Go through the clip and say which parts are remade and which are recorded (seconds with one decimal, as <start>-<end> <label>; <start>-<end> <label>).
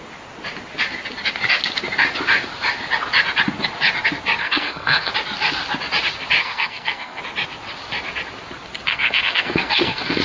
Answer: 0.0-4.4 recorded; 4.4-5.1 remade; 5.1-6.4 recorded; 6.4-7.2 remade; 7.2-8.9 recorded; 8.9-10.2 remade